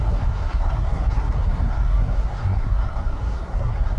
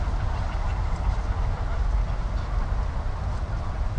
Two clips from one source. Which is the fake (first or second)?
first